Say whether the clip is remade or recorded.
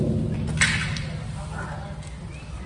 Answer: recorded